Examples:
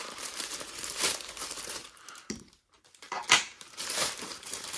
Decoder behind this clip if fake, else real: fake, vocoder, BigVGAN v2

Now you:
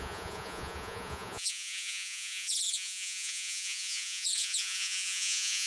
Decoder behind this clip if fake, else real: fake, vocoder, Vocos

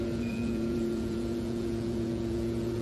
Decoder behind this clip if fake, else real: fake, vocoder, Vocos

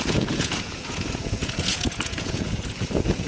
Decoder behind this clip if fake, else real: fake, vocoder, Vocos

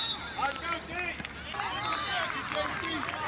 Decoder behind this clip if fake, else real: real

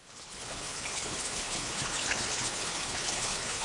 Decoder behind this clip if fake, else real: fake, codec, HILCodec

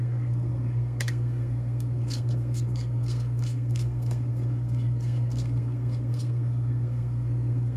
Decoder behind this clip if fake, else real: fake, codec, SNAC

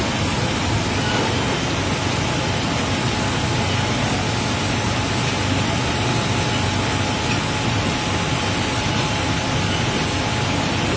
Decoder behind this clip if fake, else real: real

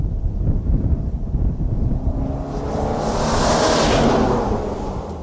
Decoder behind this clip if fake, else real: real